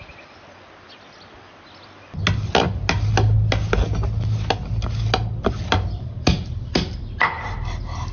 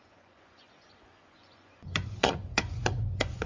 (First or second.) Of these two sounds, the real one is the first